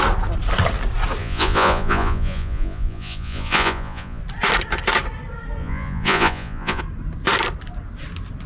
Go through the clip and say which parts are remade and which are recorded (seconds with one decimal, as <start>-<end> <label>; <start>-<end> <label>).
0.0-1.2 recorded; 1.2-4.2 remade; 4.2-5.6 recorded; 5.6-6.8 remade; 6.8-8.5 recorded